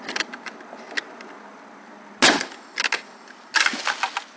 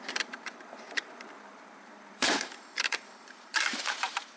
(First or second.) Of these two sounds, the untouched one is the first